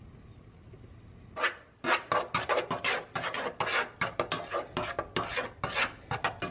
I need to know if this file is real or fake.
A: real